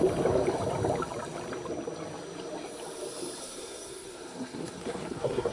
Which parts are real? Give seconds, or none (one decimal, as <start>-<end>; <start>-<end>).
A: 0.0-3.4